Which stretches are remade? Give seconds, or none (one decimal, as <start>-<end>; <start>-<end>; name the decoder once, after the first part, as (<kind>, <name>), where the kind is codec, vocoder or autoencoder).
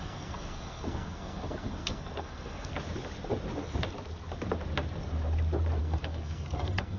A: 0.0-2.7 (codec, SNAC); 5.8-7.0